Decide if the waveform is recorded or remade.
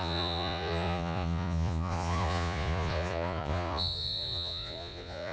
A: remade